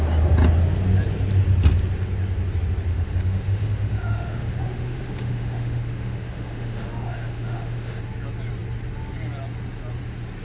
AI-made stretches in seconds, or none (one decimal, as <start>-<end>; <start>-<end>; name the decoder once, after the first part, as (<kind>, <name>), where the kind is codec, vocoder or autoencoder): 2.9-8.0 (autoencoder, DAC-VAE)